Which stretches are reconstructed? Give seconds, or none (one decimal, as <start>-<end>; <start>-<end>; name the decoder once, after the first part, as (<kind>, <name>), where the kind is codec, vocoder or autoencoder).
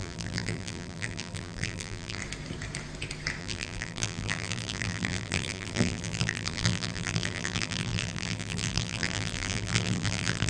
0.0-2.2 (vocoder, BigVGAN v2); 3.4-10.5